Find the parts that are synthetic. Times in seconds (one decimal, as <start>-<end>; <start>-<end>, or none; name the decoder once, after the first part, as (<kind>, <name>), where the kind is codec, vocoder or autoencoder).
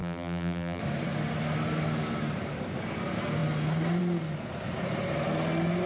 0.0-0.8 (vocoder, BigVGAN v2)